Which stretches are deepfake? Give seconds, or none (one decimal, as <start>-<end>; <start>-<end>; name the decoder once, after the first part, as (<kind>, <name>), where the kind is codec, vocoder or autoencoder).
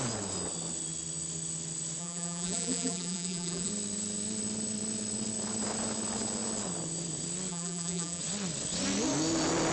2.0-3.7 (vocoder, BigVGAN v2); 7.5-8.2